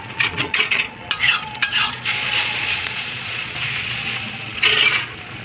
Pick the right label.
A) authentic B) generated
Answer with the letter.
B